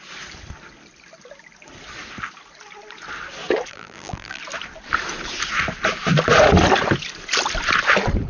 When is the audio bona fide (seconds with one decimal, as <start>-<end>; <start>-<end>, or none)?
0.0-3.7; 4.4-8.3